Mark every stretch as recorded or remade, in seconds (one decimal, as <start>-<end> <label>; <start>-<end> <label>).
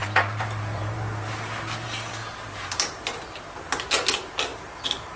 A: 0.0-2.1 remade; 2.1-5.2 recorded